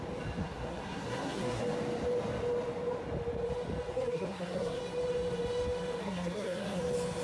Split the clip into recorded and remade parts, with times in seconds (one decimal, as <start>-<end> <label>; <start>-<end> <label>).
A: 0.0-0.4 recorded; 0.4-1.6 remade; 1.6-3.9 recorded; 3.9-4.8 remade; 4.8-6.0 recorded; 6.0-6.8 remade; 6.8-7.2 recorded